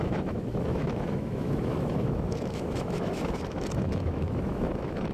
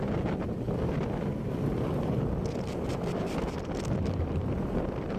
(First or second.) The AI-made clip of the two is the first